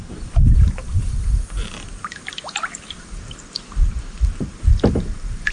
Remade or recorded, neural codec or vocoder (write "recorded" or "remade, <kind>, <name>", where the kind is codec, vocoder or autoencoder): remade, vocoder, BigVGAN v2